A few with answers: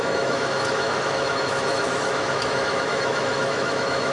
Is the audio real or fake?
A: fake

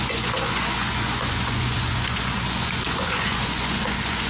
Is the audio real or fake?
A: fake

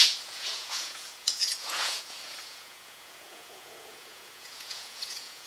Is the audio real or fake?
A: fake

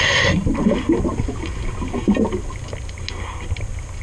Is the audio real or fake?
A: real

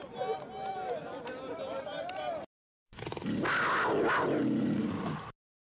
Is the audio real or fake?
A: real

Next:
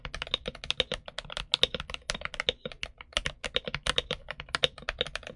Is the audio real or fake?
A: real